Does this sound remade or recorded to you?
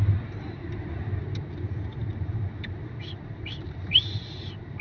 recorded